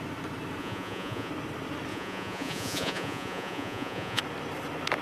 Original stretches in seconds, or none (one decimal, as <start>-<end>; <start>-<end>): 0.0-0.6; 1.3-1.9; 4.2-5.0